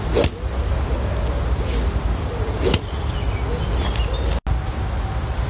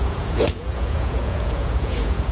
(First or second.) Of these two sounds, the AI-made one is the second